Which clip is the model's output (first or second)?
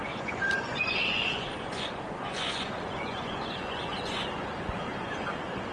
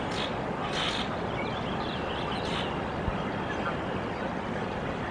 first